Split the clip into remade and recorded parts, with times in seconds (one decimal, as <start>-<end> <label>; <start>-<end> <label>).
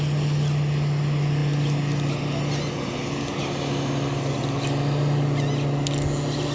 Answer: 0.0-6.5 recorded